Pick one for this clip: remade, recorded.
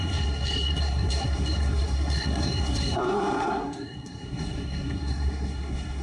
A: remade